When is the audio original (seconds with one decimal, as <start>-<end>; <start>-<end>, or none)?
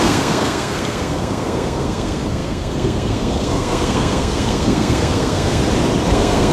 5.6-6.1